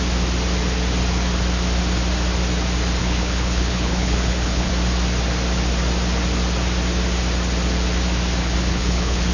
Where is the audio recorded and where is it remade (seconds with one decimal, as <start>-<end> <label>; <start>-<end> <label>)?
0.0-3.0 recorded; 3.0-4.7 remade; 4.7-8.4 recorded; 8.4-9.3 remade